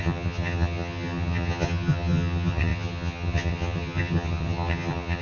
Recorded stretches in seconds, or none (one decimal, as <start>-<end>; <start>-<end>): none